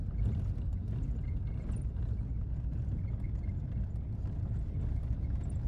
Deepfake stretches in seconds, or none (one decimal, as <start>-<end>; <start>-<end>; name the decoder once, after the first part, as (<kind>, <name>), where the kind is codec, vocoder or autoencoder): none